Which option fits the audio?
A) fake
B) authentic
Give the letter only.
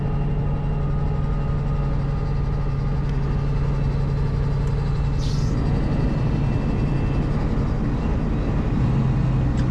B